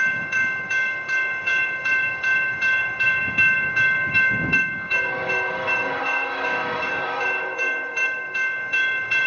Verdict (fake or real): fake